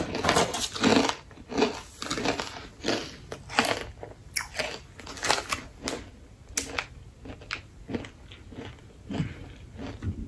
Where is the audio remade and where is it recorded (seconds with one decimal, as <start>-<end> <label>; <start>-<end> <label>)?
0.0-10.3 recorded